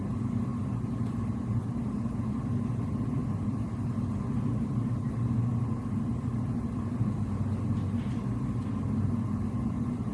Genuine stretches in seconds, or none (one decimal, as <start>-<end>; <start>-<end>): 0.0-10.1